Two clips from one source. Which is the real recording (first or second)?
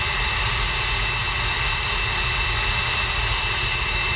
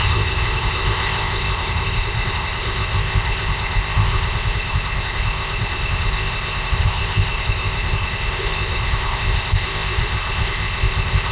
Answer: first